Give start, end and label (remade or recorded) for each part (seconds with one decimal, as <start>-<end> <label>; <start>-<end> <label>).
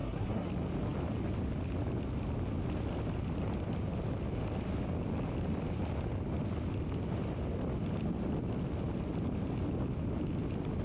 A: 0.0-0.5 remade; 0.5-10.8 recorded